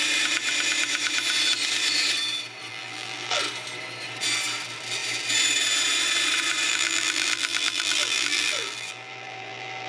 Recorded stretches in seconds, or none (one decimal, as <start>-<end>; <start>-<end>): 0.0-2.7; 3.4-6.7